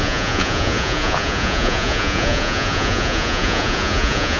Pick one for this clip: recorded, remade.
remade